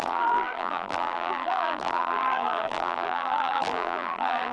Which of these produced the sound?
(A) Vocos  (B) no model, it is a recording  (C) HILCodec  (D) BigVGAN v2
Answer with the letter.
D